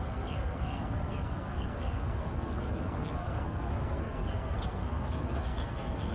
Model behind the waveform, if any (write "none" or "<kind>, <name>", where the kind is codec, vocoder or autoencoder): codec, SNAC